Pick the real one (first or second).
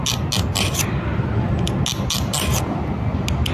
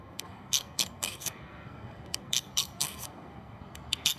first